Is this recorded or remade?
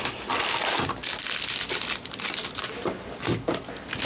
recorded